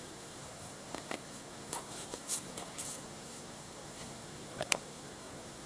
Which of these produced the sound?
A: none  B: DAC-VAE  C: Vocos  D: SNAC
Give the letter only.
D